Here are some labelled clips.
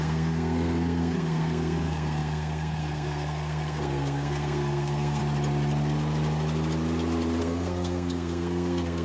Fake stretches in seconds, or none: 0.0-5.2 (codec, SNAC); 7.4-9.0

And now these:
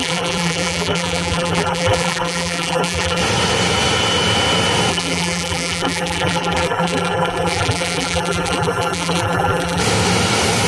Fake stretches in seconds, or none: 0.0-3.2 (vocoder, BigVGAN v2); 4.9-9.8